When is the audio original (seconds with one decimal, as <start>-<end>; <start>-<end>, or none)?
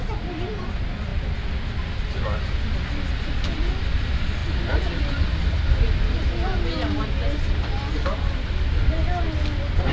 0.0-9.9